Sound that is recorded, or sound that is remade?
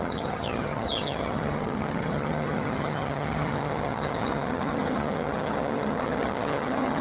remade